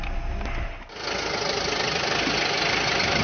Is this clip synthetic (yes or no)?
no